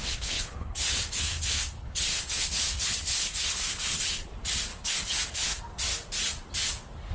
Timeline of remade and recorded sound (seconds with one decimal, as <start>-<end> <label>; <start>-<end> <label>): 0.0-4.3 remade; 4.3-4.7 recorded; 4.7-5.6 remade; 5.6-7.1 recorded